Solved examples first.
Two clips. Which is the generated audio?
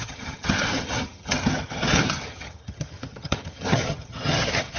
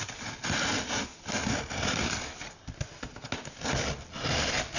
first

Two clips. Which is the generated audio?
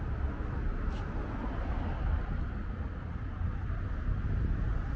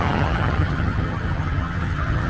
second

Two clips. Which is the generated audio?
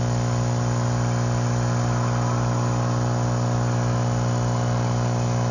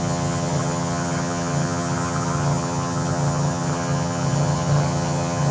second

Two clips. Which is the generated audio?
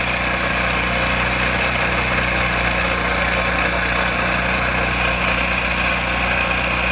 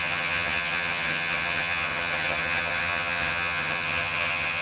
second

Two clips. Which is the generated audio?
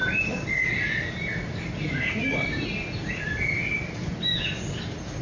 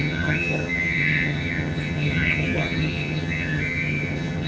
second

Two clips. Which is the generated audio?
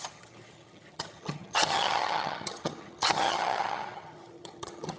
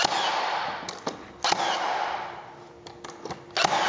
first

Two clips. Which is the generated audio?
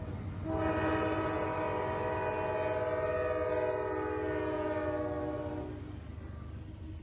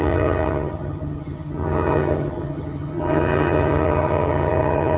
second